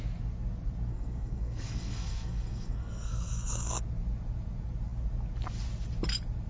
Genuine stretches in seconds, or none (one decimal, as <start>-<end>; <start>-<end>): 0.0-0.9; 3.8-6.5

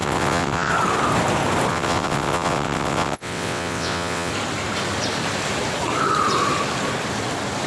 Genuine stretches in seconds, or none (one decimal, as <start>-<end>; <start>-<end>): 0.7-1.7; 4.3-7.7

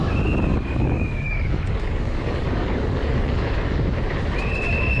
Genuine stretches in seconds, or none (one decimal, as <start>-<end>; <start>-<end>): 0.0-0.5; 3.5-5.0

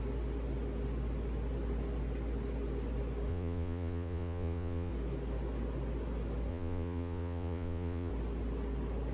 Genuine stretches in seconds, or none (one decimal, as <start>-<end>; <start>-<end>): 0.0-3.3; 4.9-6.5; 8.1-9.1